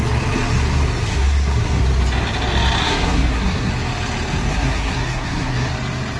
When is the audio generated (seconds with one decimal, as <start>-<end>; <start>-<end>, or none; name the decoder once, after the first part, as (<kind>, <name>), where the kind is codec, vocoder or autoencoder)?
1.1-1.8 (codec, SNAC); 2.8-3.7; 4.5-5.7